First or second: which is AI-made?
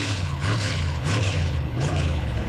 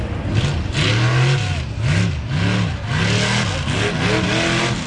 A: first